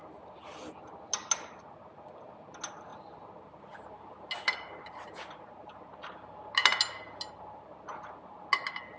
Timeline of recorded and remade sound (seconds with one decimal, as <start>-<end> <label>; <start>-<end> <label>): 0.0-9.0 recorded